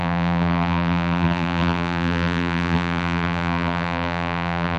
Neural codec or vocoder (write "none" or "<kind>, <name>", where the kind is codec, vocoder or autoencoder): vocoder, BigVGAN v2